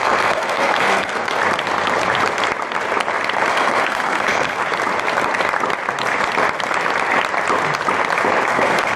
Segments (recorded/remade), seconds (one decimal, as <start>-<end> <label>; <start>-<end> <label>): 0.0-1.4 remade; 1.4-3.5 recorded; 3.5-4.6 remade; 4.6-8.5 recorded; 8.5-9.0 remade